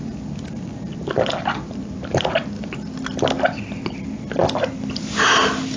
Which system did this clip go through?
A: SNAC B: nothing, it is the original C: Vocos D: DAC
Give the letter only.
B